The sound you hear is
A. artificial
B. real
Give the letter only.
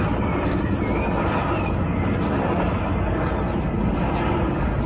B